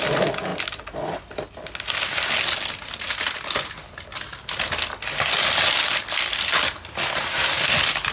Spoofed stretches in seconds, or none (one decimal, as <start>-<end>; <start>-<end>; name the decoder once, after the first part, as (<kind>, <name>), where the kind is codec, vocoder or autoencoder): none